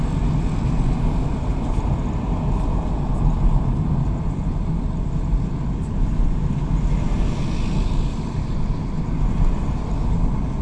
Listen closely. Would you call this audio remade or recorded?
recorded